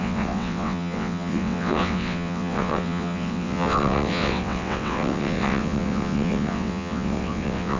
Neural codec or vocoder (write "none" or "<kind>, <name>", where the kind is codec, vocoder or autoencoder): vocoder, WaveNeXt